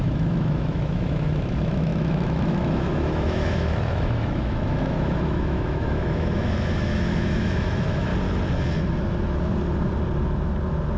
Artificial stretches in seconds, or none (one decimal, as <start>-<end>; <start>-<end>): 0.0-8.1

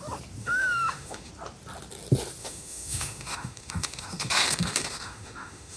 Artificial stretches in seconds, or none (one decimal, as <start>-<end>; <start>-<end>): 0.4-1.3; 2.4-5.8

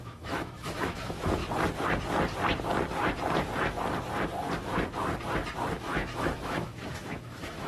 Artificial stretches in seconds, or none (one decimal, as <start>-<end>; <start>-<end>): 0.0-1.4; 5.7-7.7

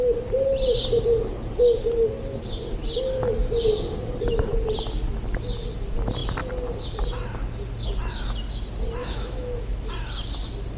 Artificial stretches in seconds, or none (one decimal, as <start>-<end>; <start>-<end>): 9.0-9.9

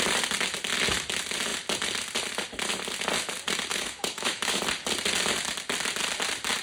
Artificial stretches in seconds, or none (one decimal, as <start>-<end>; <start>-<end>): 3.7-4.6

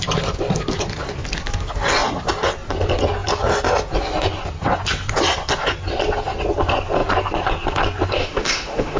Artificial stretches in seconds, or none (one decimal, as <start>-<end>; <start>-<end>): 8.2-9.0

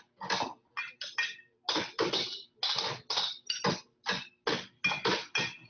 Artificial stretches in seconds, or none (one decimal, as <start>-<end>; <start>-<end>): none